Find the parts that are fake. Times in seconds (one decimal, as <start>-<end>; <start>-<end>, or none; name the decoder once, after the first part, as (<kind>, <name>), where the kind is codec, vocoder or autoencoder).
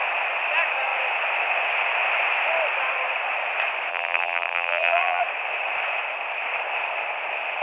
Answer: 3.9-5.2 (vocoder, BigVGAN v2)